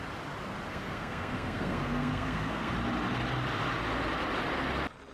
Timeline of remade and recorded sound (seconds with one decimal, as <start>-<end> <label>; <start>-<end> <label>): 0.0-0.7 recorded; 0.7-2.7 remade; 2.7-5.1 recorded

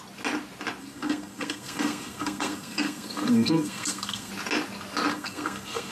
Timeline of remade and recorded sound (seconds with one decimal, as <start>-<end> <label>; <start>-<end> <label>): 0.0-0.8 recorded; 0.8-4.3 remade; 4.3-5.1 recorded; 5.1-5.9 remade

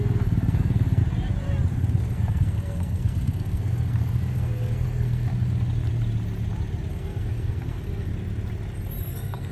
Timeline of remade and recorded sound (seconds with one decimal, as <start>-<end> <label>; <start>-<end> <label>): 0.0-1.0 remade; 1.0-1.7 recorded; 1.7-5.3 remade; 5.3-6.9 recorded; 6.9-8.1 remade; 8.1-9.0 recorded; 9.0-9.5 remade

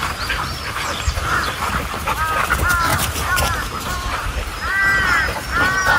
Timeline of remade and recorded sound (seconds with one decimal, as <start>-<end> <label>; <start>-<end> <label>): 0.0-1.8 remade; 1.8-2.9 recorded; 2.9-4.7 remade; 4.7-6.0 recorded

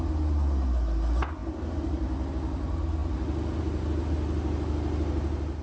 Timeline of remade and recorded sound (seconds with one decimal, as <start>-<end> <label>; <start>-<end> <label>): 0.0-5.6 recorded

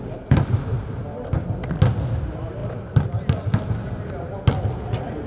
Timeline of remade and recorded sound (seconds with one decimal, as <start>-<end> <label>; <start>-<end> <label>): 0.0-5.3 recorded